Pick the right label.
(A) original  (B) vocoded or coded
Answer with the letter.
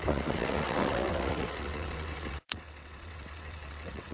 B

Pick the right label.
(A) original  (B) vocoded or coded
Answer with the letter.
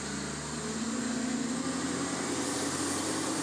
A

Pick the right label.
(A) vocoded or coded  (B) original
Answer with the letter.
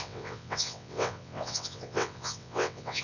A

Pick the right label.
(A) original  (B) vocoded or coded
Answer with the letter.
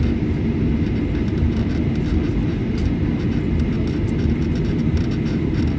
A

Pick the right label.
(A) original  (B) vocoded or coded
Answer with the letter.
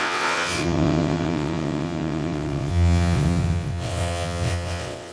B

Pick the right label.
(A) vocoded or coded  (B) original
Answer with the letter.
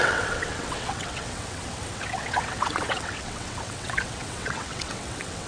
A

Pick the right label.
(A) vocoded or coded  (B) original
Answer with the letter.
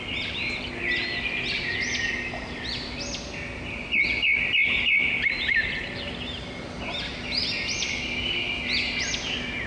B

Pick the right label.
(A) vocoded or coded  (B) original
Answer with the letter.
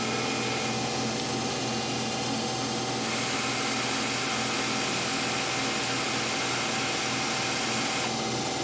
B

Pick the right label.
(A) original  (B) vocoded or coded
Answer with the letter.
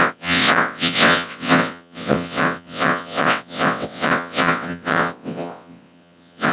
B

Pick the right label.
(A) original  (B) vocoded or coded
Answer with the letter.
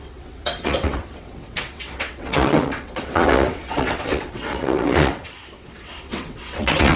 B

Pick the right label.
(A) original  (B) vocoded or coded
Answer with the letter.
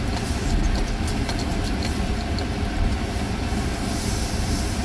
A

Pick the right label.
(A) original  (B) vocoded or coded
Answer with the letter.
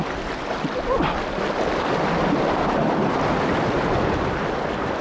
A